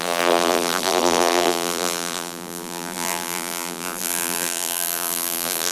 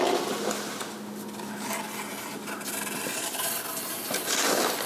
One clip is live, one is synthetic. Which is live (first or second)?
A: second